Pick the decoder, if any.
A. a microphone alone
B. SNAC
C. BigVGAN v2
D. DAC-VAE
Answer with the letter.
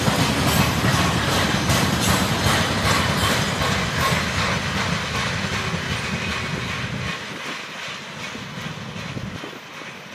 A